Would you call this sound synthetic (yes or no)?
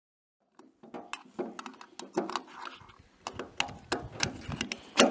no